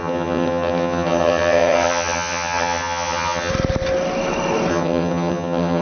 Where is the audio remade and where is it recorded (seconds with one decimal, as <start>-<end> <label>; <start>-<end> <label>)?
0.0-3.5 remade; 3.5-4.7 recorded; 4.7-5.8 remade